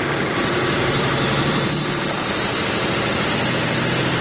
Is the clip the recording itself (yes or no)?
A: no